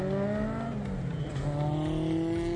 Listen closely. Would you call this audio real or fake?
real